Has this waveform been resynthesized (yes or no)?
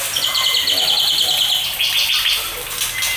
no